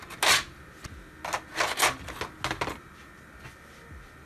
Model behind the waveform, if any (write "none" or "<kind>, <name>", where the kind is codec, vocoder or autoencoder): none